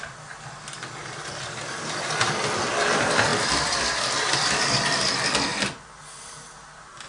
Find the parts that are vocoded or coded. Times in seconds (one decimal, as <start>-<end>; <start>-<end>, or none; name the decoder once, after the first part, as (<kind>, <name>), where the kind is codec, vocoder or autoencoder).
1.0-1.6 (vocoder, BigVGAN v2); 3.3-4.5